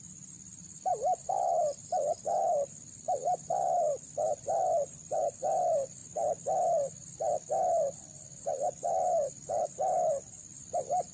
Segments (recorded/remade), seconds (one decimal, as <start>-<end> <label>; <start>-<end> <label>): 0.0-6.0 remade; 6.0-9.3 recorded; 9.3-11.1 remade